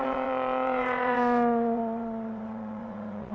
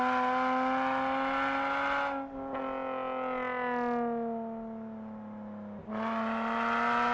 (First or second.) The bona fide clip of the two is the second